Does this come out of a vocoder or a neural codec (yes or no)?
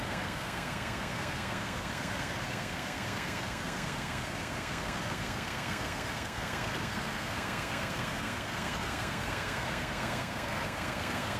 yes